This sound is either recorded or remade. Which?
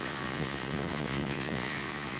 remade